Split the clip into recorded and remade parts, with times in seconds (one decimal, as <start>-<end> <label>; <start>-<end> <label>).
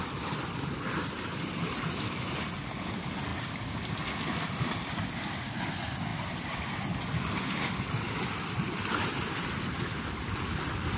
0.0-11.0 recorded